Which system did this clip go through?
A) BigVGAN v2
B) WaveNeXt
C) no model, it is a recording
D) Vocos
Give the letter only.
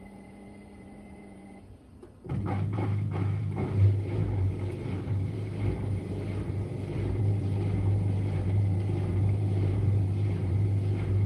A